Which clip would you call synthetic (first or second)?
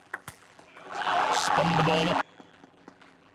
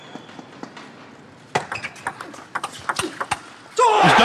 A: first